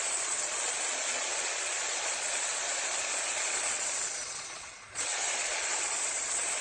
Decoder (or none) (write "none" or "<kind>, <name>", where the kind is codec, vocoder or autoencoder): vocoder, Vocos